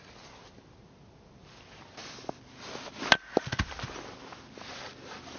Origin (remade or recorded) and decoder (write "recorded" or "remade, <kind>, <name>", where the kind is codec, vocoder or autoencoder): recorded